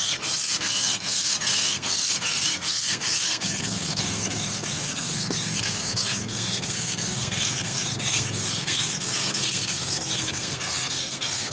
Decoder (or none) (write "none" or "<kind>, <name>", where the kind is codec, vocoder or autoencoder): codec, SNAC